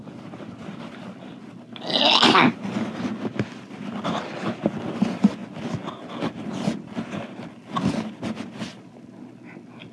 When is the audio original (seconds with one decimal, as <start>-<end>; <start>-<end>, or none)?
0.0-9.9